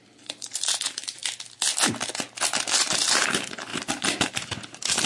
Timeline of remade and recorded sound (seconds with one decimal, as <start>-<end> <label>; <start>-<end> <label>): 0.0-1.2 remade; 1.2-2.6 recorded; 2.6-5.1 remade